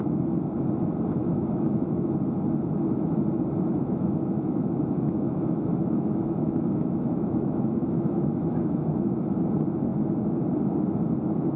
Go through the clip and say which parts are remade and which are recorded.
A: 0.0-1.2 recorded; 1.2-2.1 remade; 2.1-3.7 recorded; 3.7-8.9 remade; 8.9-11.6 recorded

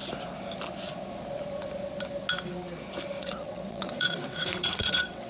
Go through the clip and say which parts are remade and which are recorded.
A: 0.0-3.2 recorded; 3.2-5.3 remade

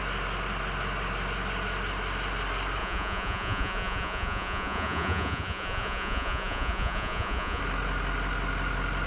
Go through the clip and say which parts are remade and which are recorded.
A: 0.0-2.8 recorded; 2.8-7.6 remade; 7.6-9.1 recorded

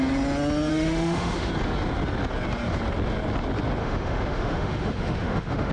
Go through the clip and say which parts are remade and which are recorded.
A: 0.0-0.7 recorded; 0.7-1.5 remade; 1.5-3.8 recorded; 3.8-5.7 remade